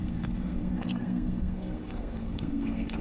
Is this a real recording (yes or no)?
no